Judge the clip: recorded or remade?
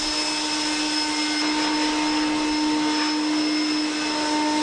recorded